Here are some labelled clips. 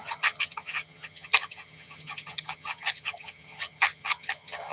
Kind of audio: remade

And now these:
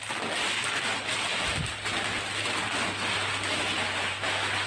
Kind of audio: recorded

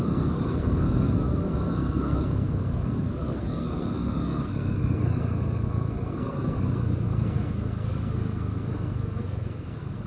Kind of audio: remade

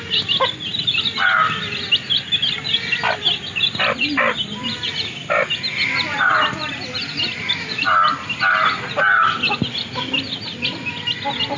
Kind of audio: recorded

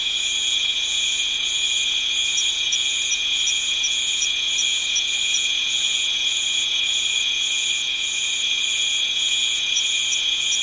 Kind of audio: remade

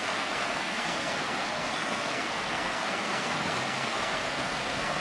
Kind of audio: remade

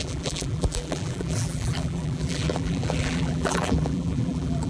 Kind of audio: remade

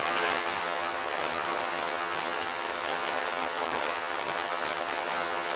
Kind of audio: remade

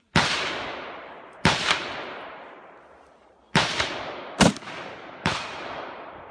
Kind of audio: remade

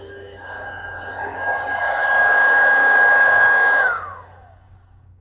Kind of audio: remade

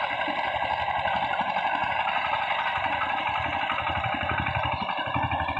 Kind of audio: remade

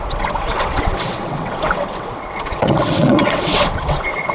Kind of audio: remade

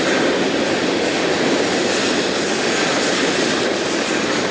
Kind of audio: recorded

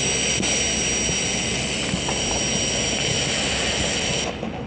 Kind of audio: recorded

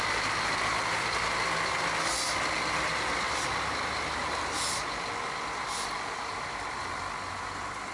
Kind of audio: recorded